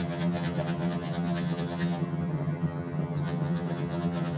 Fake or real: fake